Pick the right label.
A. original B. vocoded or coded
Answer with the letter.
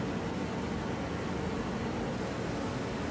A